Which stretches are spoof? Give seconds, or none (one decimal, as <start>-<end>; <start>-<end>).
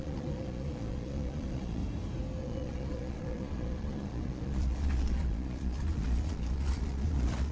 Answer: 0.0-1.8; 2.4-7.5